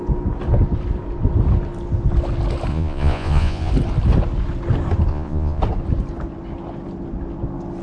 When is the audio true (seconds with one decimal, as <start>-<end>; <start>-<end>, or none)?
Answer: 0.0-2.7; 3.7-5.1; 5.6-7.8